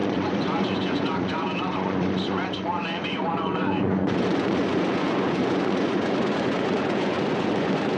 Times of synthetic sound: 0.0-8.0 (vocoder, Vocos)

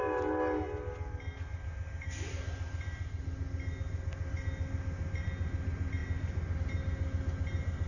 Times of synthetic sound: none

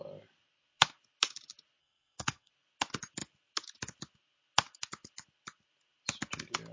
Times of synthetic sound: 1.8-2.5 (codec, SNAC)